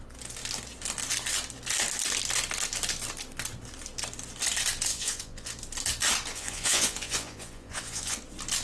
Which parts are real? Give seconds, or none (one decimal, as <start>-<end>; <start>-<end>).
0.0-4.9; 5.5-6.3; 8.2-8.6